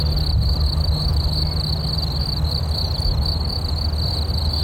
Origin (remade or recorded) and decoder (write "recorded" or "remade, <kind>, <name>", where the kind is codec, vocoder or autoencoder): recorded